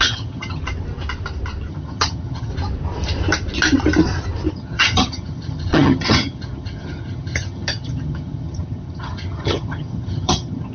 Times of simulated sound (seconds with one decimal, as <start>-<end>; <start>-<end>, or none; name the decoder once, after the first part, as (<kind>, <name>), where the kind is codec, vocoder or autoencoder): 0.0-0.6 (vocoder, HiFi-GAN); 1.7-2.5; 4.5-10.7